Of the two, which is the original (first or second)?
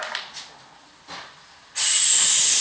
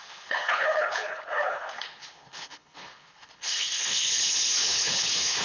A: first